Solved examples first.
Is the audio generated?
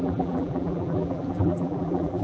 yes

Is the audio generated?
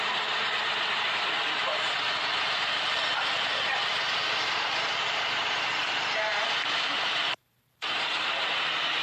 yes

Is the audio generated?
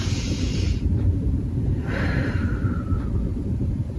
yes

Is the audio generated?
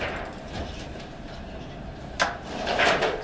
yes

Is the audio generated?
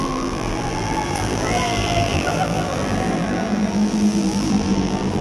yes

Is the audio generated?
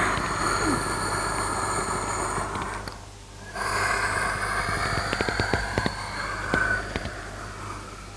no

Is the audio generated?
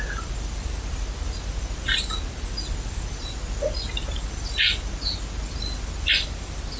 no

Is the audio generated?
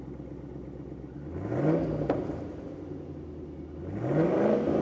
no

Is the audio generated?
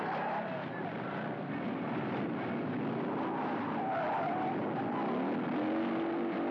no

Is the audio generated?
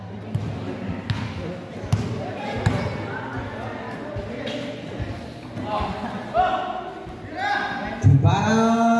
no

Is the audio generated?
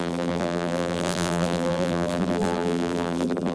yes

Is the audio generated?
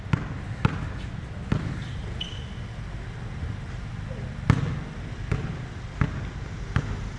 no